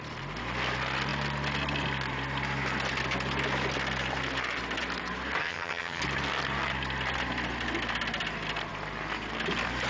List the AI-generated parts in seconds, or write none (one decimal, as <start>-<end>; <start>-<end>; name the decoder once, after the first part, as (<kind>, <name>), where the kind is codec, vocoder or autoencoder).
5.4-6.0 (vocoder, HiFi-GAN)